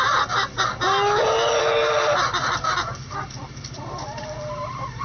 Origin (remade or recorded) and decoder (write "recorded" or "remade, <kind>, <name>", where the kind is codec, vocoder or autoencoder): recorded